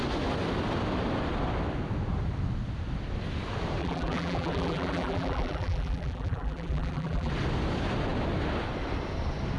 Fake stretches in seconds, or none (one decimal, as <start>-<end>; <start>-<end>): 3.8-7.3